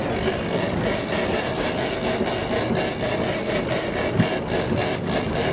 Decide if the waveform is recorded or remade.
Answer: recorded